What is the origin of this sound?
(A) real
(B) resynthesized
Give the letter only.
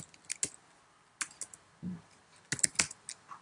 A